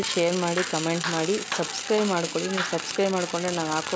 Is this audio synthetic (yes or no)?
no